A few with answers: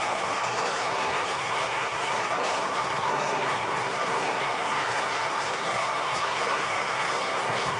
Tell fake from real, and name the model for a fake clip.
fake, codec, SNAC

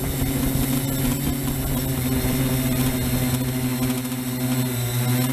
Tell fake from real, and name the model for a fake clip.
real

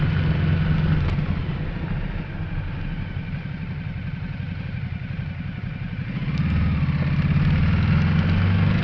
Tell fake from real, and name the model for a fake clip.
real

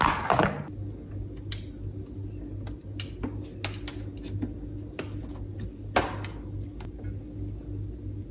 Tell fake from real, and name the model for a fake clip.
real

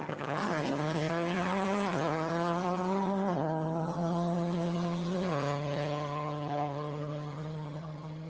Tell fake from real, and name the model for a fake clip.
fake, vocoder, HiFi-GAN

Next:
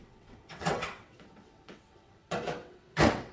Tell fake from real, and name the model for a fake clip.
fake, vocoder, WaveNeXt